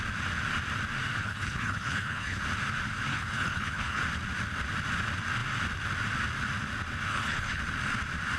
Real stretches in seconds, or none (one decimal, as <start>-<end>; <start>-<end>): 0.0-1.2; 2.4-3.1; 4.0-7.1; 7.6-8.4